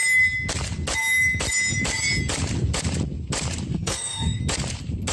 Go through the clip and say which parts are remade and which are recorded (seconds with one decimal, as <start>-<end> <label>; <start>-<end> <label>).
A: 0.0-3.7 recorded; 3.7-4.4 remade; 4.4-5.1 recorded